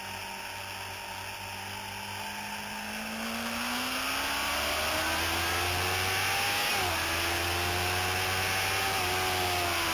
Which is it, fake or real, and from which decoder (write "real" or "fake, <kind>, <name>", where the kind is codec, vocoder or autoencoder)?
real